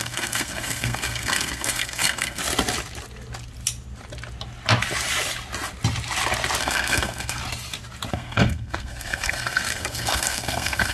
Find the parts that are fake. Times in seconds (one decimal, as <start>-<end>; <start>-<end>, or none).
0.0-2.4; 6.6-7.4; 8.1-10.9